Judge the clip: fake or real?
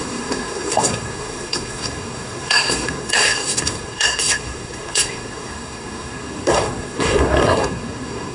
fake